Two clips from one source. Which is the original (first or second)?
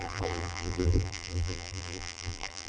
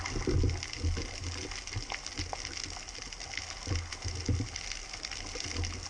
second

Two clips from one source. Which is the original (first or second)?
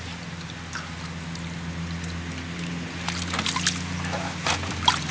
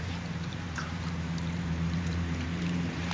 first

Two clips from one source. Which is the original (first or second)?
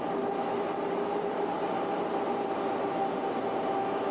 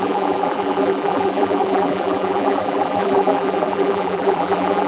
first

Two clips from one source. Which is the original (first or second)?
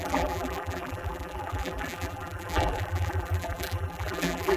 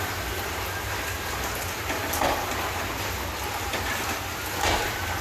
second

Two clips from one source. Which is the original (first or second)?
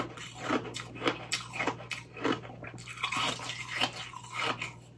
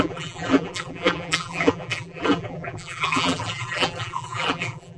first